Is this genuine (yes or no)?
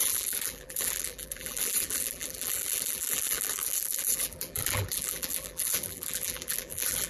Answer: no